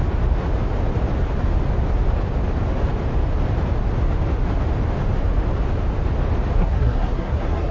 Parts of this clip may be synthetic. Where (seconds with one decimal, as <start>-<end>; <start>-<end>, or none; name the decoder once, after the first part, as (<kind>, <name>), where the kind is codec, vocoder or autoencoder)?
6.6-7.7 (codec, SNAC)